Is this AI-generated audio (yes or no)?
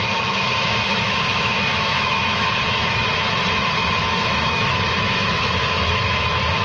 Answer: yes